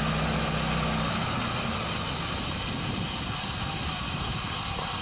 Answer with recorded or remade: recorded